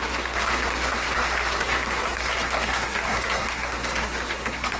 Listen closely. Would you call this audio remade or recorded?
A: remade